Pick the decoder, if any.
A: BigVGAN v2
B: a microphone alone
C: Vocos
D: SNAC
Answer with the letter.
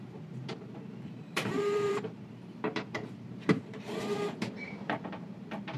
A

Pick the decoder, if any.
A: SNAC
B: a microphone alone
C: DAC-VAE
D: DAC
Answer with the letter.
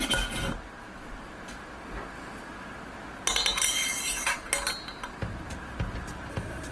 B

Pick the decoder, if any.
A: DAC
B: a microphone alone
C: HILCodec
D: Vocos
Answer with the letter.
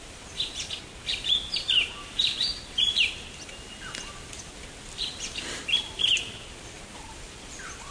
B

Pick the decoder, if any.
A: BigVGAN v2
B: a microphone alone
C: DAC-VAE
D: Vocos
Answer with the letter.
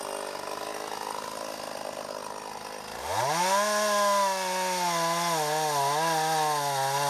B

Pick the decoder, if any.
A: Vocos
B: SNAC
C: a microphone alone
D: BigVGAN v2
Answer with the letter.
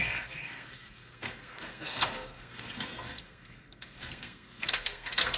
B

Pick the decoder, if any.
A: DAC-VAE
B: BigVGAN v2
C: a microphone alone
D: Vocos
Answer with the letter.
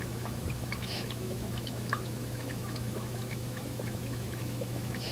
A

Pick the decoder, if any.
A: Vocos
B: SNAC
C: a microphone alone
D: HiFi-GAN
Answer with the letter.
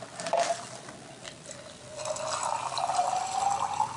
C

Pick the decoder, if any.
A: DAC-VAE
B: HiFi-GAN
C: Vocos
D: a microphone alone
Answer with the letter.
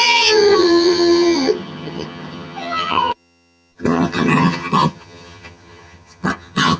B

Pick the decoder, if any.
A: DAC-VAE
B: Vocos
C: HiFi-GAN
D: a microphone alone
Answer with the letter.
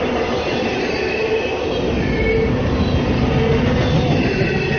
D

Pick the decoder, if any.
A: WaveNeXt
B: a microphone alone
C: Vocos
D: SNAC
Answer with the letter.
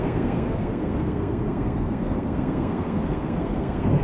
D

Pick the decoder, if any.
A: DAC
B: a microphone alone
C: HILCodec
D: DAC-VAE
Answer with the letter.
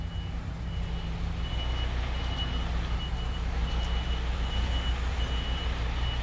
B